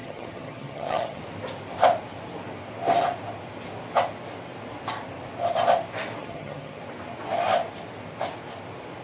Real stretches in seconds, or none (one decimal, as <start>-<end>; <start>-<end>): 1.2-6.2; 6.8-9.0

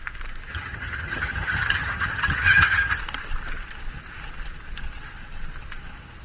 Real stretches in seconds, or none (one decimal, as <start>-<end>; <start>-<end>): 0.0-0.5; 3.0-6.2

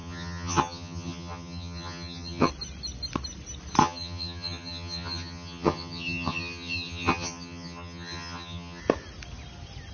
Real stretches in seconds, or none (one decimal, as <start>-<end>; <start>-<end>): 2.5-3.8; 8.8-9.9

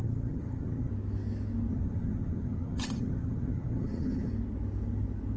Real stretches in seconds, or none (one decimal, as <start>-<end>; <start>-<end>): 0.9-1.7; 4.3-5.4